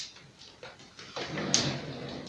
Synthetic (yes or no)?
no